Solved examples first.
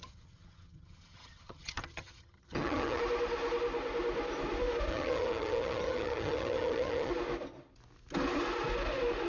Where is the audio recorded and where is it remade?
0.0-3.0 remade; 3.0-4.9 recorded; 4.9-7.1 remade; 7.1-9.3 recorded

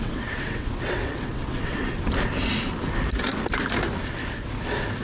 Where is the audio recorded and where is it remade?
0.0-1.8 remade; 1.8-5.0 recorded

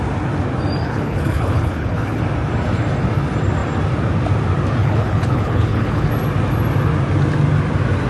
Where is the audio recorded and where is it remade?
0.0-0.8 recorded; 0.8-2.2 remade; 2.2-4.8 recorded; 4.8-6.1 remade; 6.1-8.1 recorded

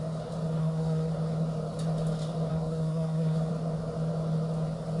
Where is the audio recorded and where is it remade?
0.0-0.6 recorded; 0.6-1.1 remade; 1.1-2.5 recorded; 2.5-3.5 remade; 3.5-5.0 recorded